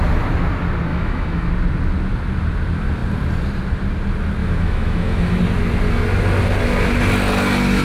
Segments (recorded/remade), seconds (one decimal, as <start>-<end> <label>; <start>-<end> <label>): 0.0-0.9 recorded; 0.9-1.5 remade; 1.5-4.4 recorded; 4.4-5.4 remade; 5.4-7.8 recorded